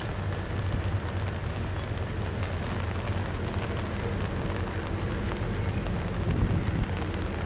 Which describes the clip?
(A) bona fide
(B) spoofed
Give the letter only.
A